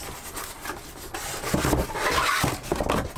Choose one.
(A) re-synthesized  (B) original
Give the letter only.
B